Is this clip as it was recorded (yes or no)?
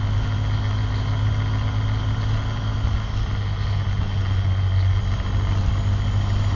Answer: yes